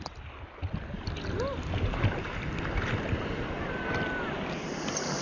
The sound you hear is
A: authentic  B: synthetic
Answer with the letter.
A